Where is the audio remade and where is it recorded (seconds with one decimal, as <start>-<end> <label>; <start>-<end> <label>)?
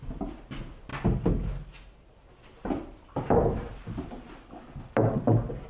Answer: 0.0-5.7 recorded